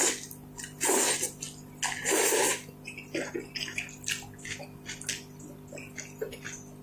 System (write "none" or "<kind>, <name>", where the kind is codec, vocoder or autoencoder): none